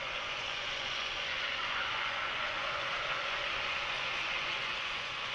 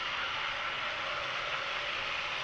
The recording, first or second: second